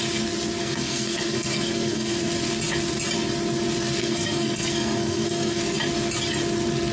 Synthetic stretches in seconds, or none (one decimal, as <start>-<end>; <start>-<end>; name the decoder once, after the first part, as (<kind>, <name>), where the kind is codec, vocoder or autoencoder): 0.6-2.3 (codec, SNAC); 4.0-5.6